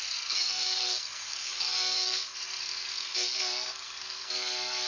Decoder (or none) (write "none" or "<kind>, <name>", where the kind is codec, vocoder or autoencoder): codec, SNAC